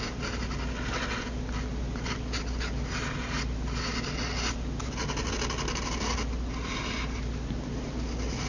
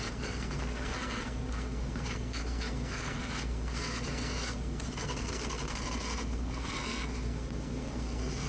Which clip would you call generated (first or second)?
second